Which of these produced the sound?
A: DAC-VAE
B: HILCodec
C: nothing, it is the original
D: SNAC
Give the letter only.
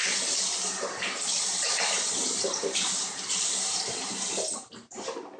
C